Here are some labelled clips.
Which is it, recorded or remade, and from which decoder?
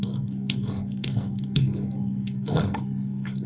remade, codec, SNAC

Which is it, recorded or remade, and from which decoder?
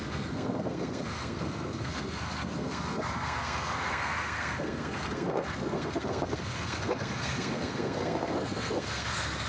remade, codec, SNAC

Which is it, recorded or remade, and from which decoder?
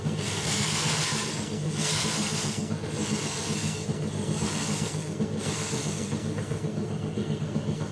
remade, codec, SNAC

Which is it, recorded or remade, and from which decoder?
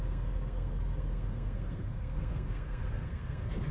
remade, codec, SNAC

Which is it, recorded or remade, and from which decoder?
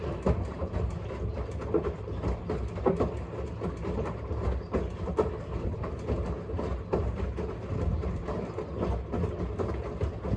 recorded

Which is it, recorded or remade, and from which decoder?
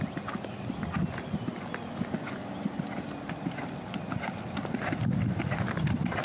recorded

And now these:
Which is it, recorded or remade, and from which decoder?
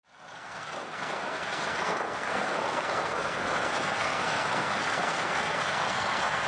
remade, codec, SNAC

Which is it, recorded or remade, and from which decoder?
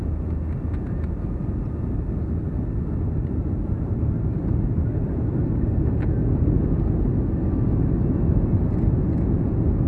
recorded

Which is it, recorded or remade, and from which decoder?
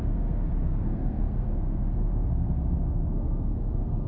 remade, codec, SNAC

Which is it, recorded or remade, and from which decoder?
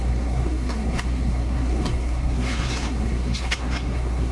remade, codec, SNAC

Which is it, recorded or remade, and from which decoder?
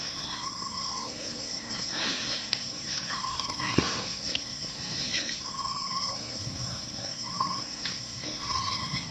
remade, codec, SNAC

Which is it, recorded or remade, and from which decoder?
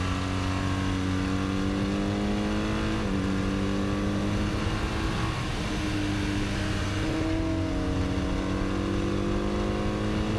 recorded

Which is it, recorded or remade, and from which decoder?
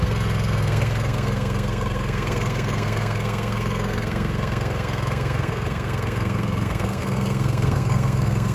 remade, codec, SNAC